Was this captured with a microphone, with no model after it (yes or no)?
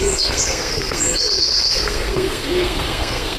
no